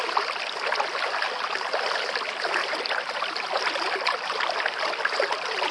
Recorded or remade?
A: recorded